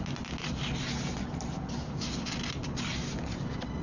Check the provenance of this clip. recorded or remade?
recorded